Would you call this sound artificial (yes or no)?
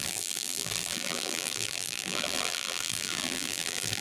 yes